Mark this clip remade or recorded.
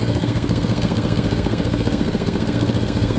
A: remade